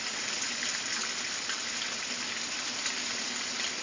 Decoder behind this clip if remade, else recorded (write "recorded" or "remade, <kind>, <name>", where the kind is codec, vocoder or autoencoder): recorded